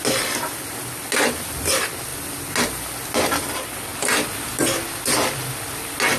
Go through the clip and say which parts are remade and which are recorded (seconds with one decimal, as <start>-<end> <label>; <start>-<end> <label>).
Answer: 0.0-6.2 recorded